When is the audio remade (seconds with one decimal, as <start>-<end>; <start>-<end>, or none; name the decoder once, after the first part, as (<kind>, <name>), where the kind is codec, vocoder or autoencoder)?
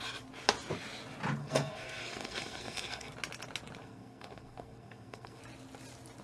1.4-3.1 (codec, SNAC); 3.8-5.4